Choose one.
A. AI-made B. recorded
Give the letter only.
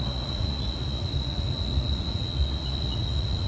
A